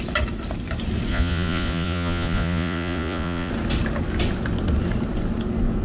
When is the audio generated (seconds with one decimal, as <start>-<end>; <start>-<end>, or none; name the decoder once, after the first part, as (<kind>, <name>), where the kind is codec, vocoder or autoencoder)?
1.1-3.5 (vocoder, Vocos)